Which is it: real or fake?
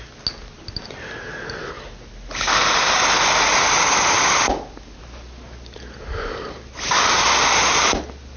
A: real